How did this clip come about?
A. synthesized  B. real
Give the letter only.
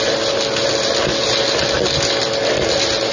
B